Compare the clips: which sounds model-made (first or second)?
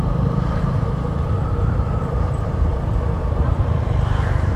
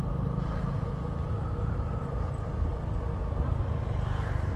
first